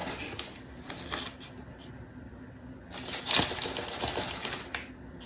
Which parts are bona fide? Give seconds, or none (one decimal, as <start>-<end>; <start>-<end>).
0.0-5.3